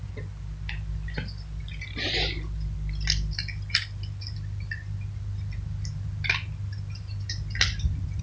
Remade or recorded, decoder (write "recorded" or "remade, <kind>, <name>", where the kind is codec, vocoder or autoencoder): recorded